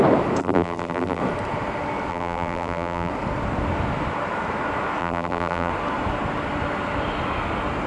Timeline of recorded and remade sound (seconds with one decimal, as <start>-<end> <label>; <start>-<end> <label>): 0.0-0.4 recorded; 0.4-1.2 remade; 1.2-2.1 recorded; 2.1-3.1 remade; 3.1-5.0 recorded; 5.0-5.7 remade; 5.7-7.9 recorded